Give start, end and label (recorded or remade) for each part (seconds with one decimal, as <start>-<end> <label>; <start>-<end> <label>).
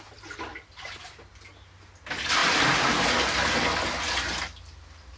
0.0-5.2 recorded